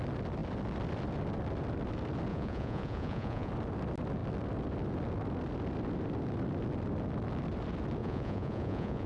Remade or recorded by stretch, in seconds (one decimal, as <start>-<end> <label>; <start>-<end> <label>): 0.0-2.3 recorded; 2.3-3.5 remade; 3.5-8.0 recorded; 8.0-9.1 remade